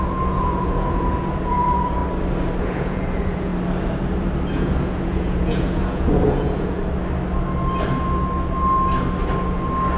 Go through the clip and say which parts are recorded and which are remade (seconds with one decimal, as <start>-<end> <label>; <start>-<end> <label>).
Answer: 0.0-2.0 remade; 2.0-2.6 recorded; 2.6-3.5 remade; 3.5-4.5 recorded; 4.5-6.8 remade; 6.8-10.0 recorded